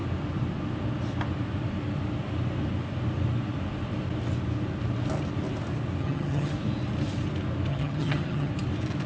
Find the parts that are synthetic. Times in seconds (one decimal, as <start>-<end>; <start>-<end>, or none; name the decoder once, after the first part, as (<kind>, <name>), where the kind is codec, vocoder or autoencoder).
6.0-6.5 (vocoder, HiFi-GAN); 7.7-8.5